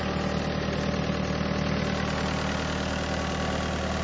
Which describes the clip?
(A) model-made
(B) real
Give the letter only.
B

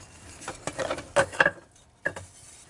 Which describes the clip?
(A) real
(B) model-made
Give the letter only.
A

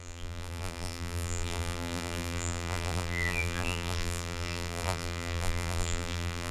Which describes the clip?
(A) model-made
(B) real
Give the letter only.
A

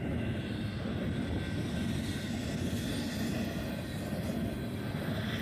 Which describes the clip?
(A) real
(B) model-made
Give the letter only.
A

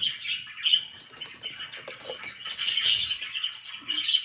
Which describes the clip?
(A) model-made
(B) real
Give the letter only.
B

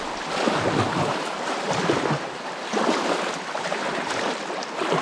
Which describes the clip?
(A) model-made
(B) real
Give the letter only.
B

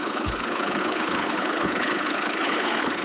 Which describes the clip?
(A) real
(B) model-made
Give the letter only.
B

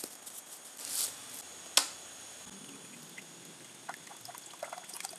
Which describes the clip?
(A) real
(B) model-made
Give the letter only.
A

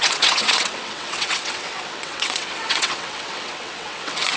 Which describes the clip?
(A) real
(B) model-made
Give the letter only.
B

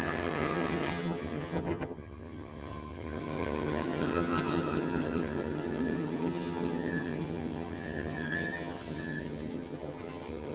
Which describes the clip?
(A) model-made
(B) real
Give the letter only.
A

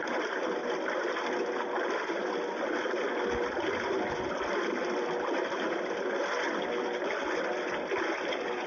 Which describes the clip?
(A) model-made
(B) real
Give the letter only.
B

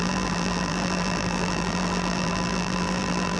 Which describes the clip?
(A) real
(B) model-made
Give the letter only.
B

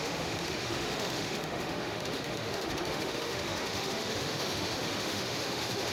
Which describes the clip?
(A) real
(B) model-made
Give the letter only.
B